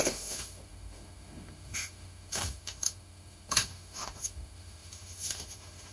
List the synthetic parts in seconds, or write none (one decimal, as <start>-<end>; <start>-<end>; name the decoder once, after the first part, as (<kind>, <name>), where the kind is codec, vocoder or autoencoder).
0.0-5.9 (autoencoder, DAC-VAE)